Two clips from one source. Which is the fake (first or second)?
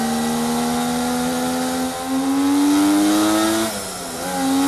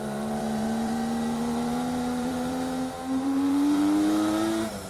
second